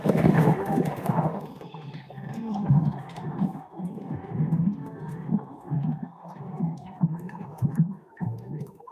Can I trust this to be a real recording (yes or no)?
no